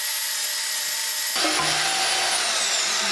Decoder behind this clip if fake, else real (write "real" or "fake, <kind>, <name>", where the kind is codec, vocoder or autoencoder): real